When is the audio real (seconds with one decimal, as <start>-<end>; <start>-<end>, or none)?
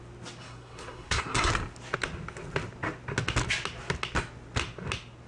0.0-0.4; 1.5-5.3